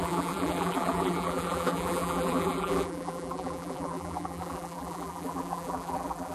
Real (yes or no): no